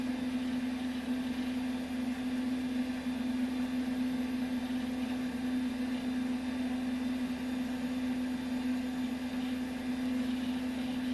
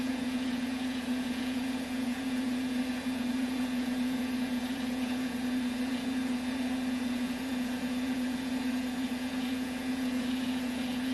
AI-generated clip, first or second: second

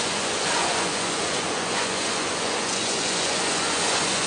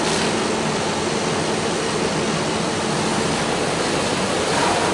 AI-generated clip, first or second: first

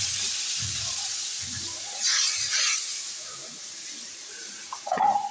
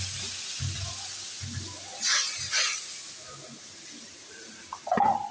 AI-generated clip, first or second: first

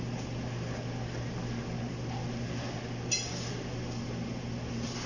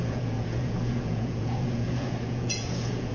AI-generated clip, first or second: second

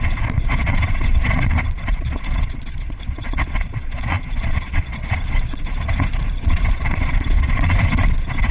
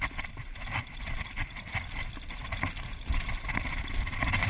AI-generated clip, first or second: first